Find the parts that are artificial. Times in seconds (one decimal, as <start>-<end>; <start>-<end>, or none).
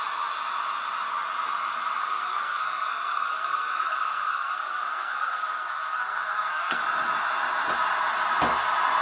2.0-6.8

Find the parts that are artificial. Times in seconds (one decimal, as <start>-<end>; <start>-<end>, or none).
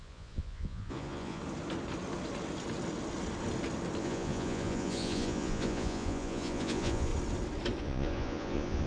0.0-1.4; 4.0-7.1; 7.8-8.9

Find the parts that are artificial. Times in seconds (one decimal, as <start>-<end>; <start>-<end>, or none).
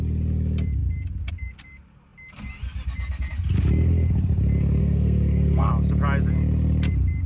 4.8-5.7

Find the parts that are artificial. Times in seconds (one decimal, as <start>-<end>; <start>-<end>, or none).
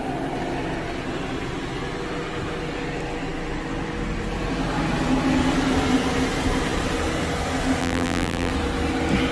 7.8-8.5